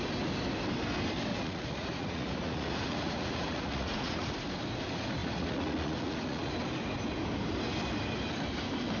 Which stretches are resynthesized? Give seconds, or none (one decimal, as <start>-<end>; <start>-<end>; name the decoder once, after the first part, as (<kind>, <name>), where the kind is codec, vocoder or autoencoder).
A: 1.3-4.3 (vocoder, Vocos); 5.2-6.5